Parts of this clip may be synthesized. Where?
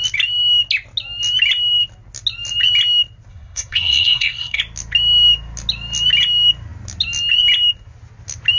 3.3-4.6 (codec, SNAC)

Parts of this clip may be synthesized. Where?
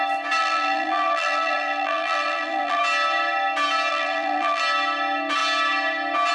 0.4-2.8 (vocoder, BigVGAN v2); 3.9-4.6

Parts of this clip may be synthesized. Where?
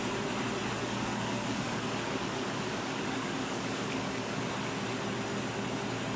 0.8-4.5 (codec, DAC)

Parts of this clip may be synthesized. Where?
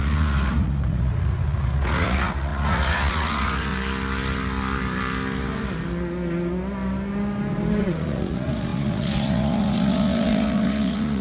0.0-3.7 (vocoder, Vocos); 7.8-11.2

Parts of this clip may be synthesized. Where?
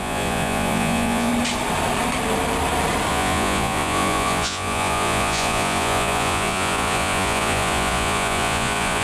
0.0-1.3 (vocoder, Vocos); 3.1-9.0